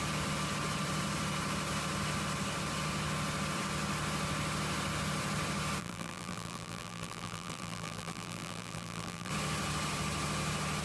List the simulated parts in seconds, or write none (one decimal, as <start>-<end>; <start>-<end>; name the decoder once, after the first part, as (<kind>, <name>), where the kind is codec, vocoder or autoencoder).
5.8-9.3 (vocoder, BigVGAN v2)